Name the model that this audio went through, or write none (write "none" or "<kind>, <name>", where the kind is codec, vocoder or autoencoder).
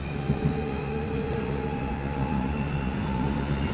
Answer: vocoder, Vocos